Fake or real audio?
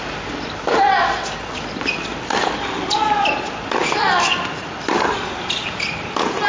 real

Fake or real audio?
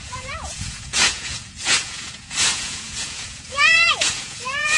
fake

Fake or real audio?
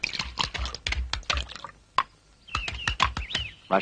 real